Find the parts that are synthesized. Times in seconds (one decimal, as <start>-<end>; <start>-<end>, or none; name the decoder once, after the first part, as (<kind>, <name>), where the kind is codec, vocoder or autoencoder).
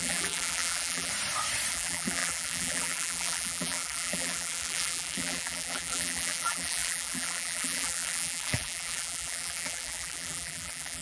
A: 0.0-1.1 (vocoder, BigVGAN v2); 1.7-11.0